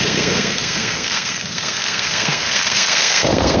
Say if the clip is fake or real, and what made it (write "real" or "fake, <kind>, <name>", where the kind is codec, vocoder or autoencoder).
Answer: fake, codec, SNAC